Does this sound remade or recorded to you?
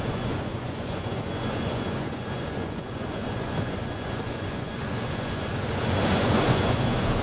remade